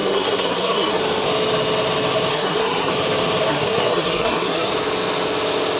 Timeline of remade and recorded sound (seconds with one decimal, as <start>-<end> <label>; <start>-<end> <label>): 0.0-1.0 remade; 1.0-2.3 recorded; 2.3-2.9 remade; 2.9-3.5 recorded; 3.5-4.7 remade; 4.7-5.8 recorded

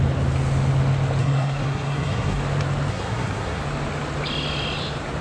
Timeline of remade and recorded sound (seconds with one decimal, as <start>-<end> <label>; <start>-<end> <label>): 0.0-1.2 recorded; 1.2-2.4 remade; 2.4-2.9 recorded; 2.9-3.6 remade; 3.6-5.2 recorded

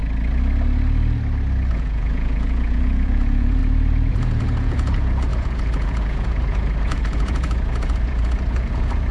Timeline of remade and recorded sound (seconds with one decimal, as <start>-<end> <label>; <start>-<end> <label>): 0.0-1.7 recorded; 1.7-3.6 remade; 3.6-4.1 recorded; 4.1-9.1 remade

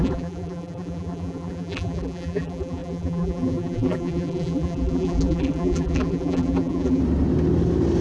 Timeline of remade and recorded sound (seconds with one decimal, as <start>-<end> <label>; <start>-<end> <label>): 0.0-7.0 remade; 7.0-8.0 recorded

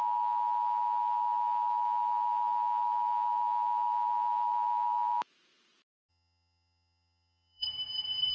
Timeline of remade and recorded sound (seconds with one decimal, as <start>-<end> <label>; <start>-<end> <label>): 0.0-6.1 recorded; 6.1-8.3 remade

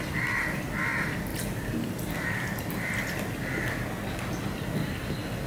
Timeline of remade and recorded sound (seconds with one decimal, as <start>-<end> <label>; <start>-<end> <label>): 0.0-5.5 recorded

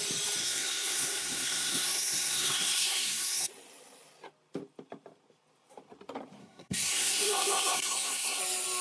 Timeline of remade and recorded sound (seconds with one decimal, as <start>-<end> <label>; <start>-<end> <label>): 0.0-0.4 recorded; 0.4-3.5 remade; 3.5-6.4 recorded; 6.4-8.4 remade; 8.4-8.8 recorded